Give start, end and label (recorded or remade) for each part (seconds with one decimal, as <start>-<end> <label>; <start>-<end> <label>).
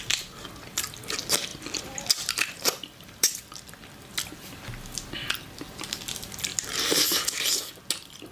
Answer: 0.0-1.5 recorded; 1.5-3.3 remade; 3.3-6.5 recorded; 6.5-7.8 remade; 7.8-8.3 recorded